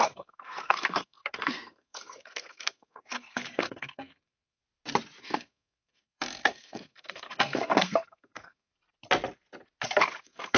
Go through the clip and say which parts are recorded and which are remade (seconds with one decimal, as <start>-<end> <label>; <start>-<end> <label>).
0.0-4.6 remade; 4.6-5.2 recorded; 5.2-8.7 remade; 8.7-10.2 recorded; 10.2-10.6 remade